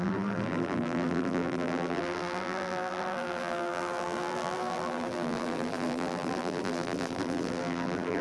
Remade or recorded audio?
remade